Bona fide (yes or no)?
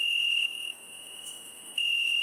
no